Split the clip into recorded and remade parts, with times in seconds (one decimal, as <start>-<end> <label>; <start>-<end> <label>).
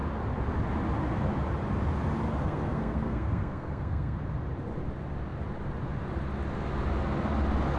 0.0-2.4 recorded; 2.4-4.2 remade; 4.2-7.8 recorded